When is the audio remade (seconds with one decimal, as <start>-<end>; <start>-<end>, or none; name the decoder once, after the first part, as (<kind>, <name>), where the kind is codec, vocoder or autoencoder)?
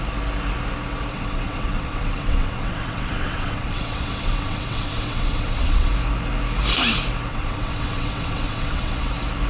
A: 1.1-5.9 (vocoder, WaveNeXt); 7.3-9.1